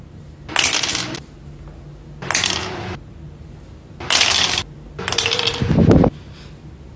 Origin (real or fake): real